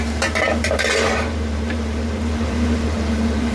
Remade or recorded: remade